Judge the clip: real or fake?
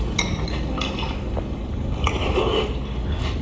real